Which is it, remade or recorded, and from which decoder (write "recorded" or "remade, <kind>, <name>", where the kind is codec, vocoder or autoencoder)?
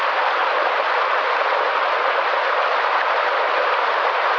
recorded